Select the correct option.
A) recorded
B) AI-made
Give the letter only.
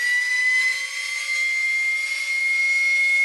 A